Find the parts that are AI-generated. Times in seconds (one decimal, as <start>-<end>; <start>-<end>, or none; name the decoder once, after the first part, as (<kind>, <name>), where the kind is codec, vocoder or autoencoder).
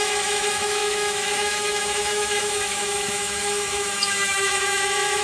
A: 0.0-5.2 (autoencoder, DAC-VAE)